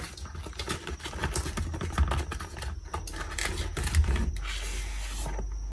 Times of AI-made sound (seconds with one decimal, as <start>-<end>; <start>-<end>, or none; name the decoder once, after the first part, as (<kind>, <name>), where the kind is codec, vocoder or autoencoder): none